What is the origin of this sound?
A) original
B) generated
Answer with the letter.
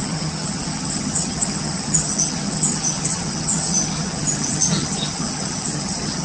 B